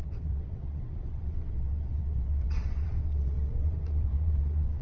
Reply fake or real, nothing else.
fake